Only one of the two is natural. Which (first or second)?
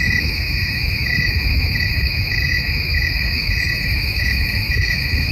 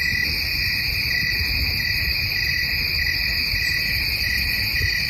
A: second